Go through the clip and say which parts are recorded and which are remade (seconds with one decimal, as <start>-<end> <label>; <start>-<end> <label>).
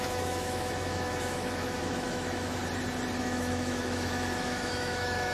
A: 0.0-2.6 remade; 2.6-3.2 recorded; 3.2-5.3 remade